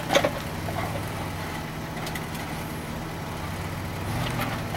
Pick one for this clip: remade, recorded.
recorded